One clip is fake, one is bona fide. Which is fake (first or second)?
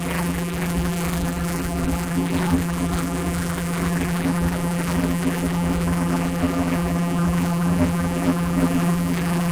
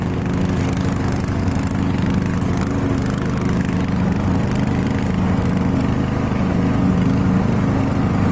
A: first